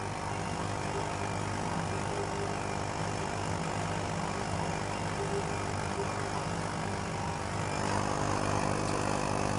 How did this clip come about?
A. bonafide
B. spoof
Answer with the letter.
A